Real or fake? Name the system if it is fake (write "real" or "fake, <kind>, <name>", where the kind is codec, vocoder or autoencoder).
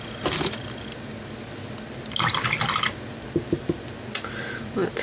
real